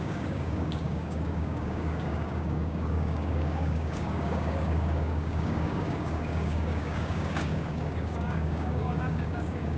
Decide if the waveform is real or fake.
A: fake